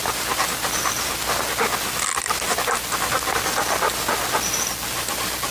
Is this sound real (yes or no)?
yes